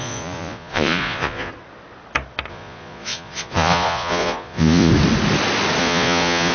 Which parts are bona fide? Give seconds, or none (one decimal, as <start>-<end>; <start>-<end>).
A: 1.5-2.5; 4.9-5.8